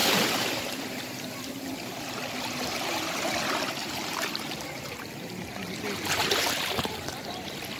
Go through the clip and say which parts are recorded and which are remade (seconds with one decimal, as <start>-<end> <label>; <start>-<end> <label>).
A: 0.0-0.6 remade; 0.6-3.8 recorded; 3.8-5.3 remade; 5.3-6.2 recorded; 6.2-7.1 remade; 7.1-7.8 recorded